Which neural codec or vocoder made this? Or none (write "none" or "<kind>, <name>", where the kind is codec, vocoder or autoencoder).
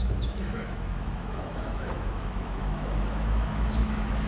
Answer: autoencoder, DAC-VAE